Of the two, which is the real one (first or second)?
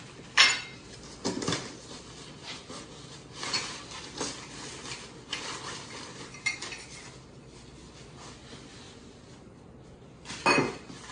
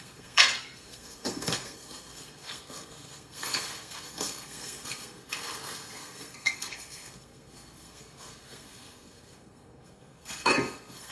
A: first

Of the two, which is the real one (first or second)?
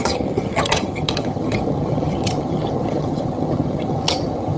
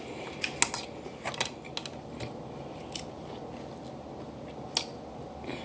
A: second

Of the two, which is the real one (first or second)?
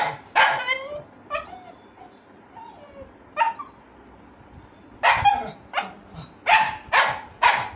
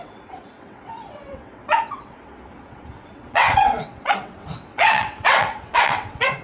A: first